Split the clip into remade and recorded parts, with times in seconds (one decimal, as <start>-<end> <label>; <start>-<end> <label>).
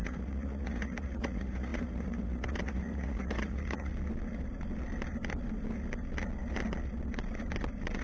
0.0-3.9 remade; 3.9-8.0 recorded